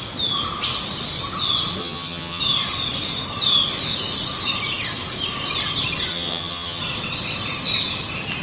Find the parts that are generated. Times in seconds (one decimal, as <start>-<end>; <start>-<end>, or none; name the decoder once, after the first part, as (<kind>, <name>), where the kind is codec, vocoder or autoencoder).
1.8-2.4 (vocoder, HiFi-GAN); 6.1-6.8